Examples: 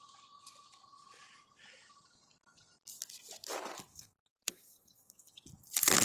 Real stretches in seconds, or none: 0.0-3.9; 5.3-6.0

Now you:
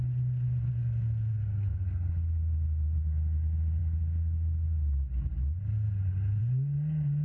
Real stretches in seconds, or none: 0.0-1.3; 2.1-7.2

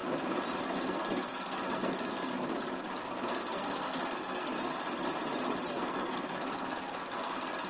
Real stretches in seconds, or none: 0.0-0.6; 2.3-3.0; 4.7-5.7

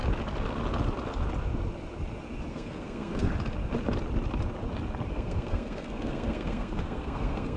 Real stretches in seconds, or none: 0.0-2.5; 3.3-5.1

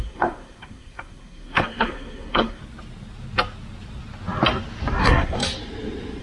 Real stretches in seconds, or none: 2.6-5.0; 5.4-6.2

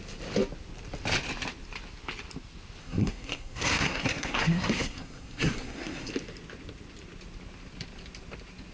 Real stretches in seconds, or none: 0.0-2.8; 6.1-8.7